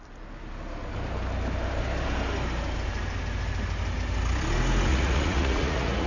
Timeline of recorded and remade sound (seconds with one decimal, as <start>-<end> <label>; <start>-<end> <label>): 0.0-4.9 recorded; 4.9-6.1 remade